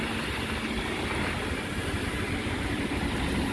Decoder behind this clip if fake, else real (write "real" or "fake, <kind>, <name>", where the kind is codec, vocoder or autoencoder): real